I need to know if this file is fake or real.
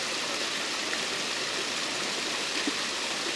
real